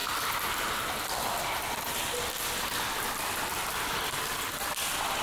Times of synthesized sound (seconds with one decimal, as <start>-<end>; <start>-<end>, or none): none